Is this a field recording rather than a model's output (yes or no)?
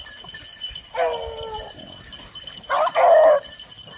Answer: yes